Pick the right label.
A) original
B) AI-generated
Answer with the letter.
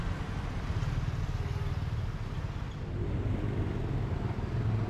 A